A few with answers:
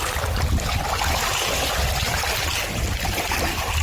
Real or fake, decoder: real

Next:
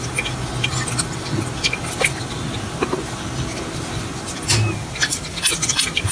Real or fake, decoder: real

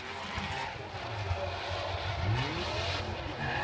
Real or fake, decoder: real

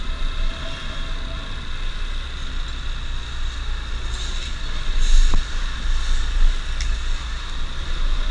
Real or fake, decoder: real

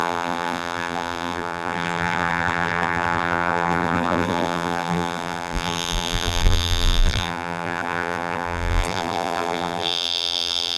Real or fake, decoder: fake, vocoder, BigVGAN v2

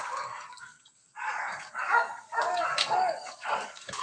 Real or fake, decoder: fake, codec, DAC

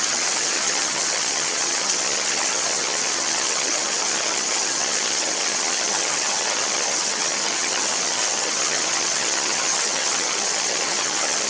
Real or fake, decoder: fake, vocoder, HiFi-GAN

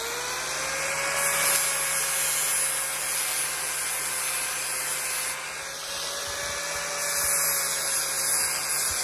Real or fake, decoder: real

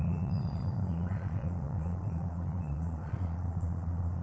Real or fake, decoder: fake, vocoder, Vocos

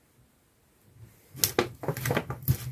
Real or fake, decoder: real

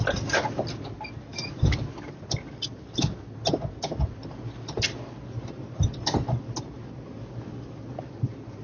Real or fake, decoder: real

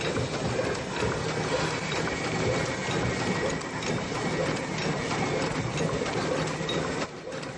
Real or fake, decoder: real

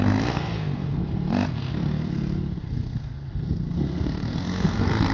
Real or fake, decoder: fake, codec, SNAC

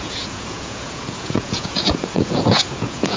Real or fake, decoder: fake, vocoder, Vocos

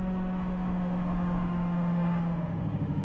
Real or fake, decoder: fake, autoencoder, DAC-VAE